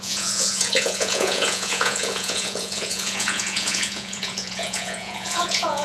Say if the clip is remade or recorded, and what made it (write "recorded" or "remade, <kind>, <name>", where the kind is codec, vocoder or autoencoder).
remade, vocoder, Vocos